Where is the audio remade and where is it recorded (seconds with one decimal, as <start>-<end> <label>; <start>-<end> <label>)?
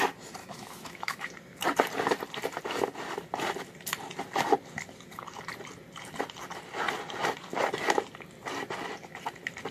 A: 0.0-0.4 recorded; 0.4-1.3 remade; 1.3-9.7 recorded